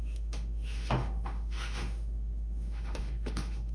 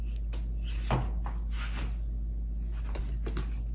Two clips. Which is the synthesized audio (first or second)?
first